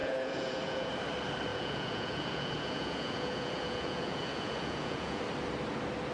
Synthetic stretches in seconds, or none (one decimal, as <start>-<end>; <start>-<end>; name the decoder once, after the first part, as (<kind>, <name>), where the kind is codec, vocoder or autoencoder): 0.0-0.9 (vocoder, Vocos); 1.5-5.2